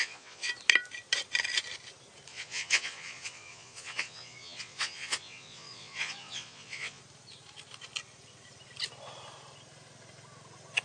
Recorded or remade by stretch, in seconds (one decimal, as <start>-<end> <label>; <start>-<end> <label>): 0.0-0.5 remade; 0.5-2.3 recorded; 2.3-7.0 remade; 7.0-10.8 recorded